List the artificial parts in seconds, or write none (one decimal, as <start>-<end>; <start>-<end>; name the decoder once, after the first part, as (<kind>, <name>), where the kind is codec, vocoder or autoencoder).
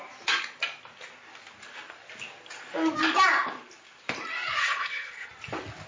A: 4.6-5.3 (codec, HILCodec)